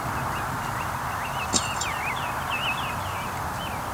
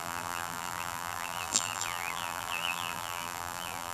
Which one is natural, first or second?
first